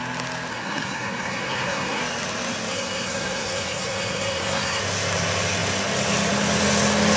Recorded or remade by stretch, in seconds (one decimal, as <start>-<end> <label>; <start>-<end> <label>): 0.0-0.5 recorded; 0.5-2.0 remade; 2.0-2.7 recorded; 2.7-4.8 remade; 4.8-7.2 recorded